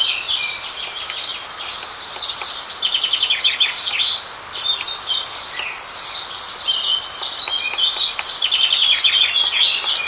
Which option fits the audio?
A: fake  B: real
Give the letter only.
B